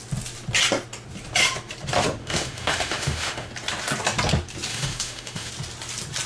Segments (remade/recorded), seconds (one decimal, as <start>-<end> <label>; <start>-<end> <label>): 0.0-2.2 recorded; 2.2-3.5 remade; 3.5-4.7 recorded; 4.7-5.5 remade; 5.5-6.3 recorded